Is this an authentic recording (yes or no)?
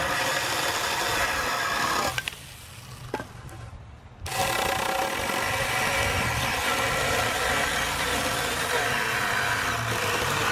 yes